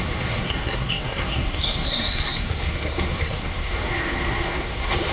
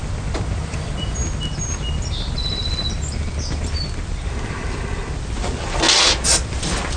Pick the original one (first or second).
second